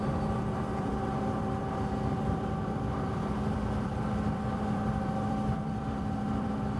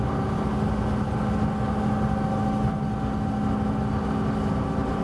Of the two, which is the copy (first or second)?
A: first